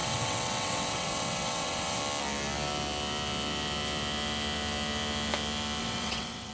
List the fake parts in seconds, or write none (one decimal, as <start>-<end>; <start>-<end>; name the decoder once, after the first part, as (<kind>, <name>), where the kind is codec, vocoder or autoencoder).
0.0-2.0 (vocoder, WaveNeXt); 5.8-6.5